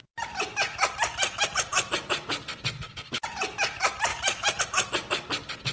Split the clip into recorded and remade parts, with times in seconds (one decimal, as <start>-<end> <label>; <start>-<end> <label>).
0.0-1.7 recorded; 1.7-3.0 remade; 3.0-4.1 recorded; 4.1-4.6 remade; 4.6-5.7 recorded